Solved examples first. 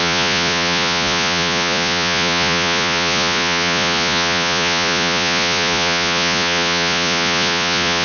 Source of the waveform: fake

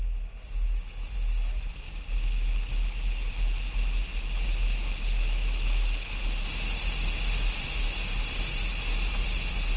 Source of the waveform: real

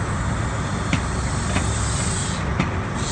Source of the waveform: real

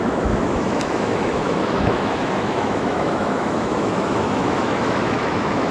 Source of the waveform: fake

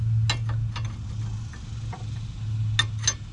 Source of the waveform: real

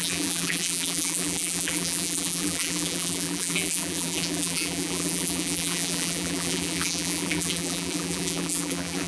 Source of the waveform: fake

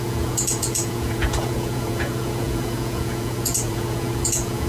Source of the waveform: fake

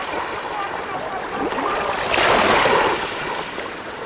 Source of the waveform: real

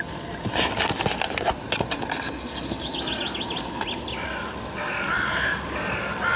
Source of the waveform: real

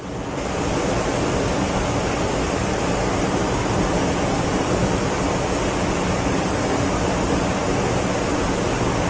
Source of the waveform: real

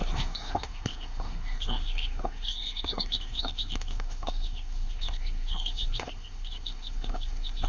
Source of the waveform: fake